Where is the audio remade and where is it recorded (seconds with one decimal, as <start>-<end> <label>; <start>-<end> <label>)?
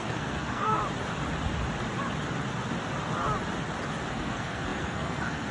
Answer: 0.0-0.8 remade; 0.8-4.1 recorded; 4.1-5.5 remade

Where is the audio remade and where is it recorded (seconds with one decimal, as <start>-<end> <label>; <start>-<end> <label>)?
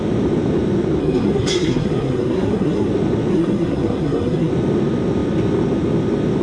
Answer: 0.0-1.0 recorded; 1.0-2.9 remade; 2.9-3.3 recorded; 3.3-4.5 remade; 4.5-6.4 recorded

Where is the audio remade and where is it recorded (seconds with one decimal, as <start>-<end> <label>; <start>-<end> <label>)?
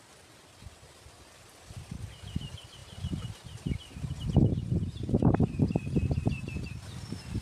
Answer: 0.0-2.8 recorded; 2.8-6.7 remade; 6.7-7.4 recorded